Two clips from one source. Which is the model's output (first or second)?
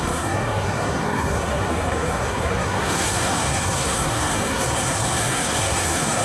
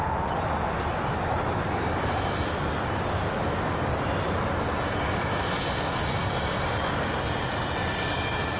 first